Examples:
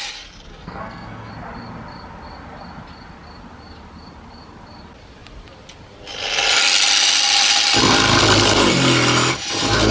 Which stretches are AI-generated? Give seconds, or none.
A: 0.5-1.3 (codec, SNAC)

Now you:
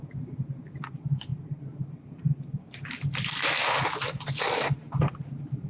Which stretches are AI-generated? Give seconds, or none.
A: none

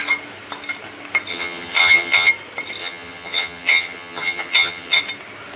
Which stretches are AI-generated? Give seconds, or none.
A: 1.3-2.3 (vocoder, HiFi-GAN); 2.8-5.0

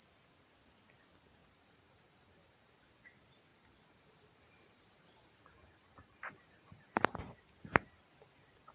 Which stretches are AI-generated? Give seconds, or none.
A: 1.4-2.7 (vocoder, BigVGAN v2); 3.5-7.2

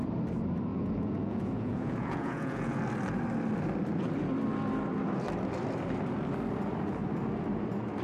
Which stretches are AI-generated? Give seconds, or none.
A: 0.7-2.8 (vocoder, Vocos)

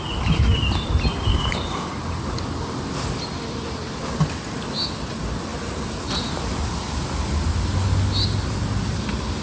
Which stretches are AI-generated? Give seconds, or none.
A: none

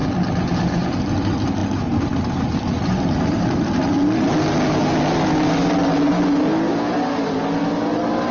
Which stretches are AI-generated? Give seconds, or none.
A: none